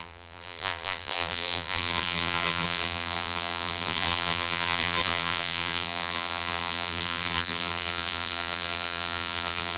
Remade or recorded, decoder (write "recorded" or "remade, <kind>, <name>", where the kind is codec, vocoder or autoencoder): remade, vocoder, BigVGAN v2